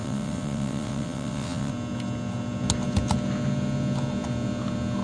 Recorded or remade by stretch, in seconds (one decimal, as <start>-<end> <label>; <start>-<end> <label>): 0.0-1.7 remade; 1.7-5.0 recorded